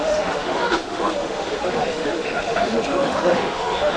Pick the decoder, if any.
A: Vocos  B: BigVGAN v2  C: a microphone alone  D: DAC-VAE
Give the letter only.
D